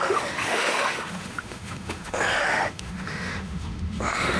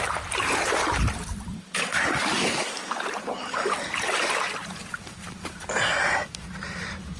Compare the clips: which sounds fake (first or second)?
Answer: first